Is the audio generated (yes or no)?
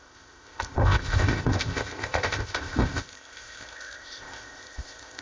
yes